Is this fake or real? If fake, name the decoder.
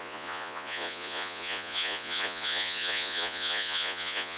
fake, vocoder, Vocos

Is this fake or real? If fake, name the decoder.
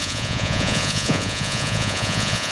fake, vocoder, Vocos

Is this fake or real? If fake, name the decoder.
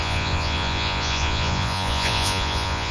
fake, vocoder, Vocos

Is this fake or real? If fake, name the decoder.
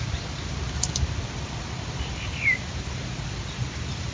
real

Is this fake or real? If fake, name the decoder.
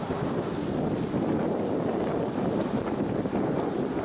real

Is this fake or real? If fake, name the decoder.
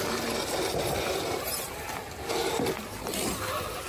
real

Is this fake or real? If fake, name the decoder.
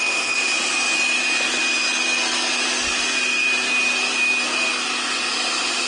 real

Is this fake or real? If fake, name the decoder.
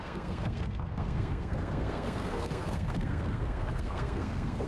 fake, codec, SNAC